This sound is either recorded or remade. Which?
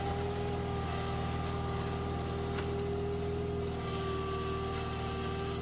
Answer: recorded